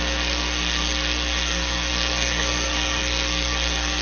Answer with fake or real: fake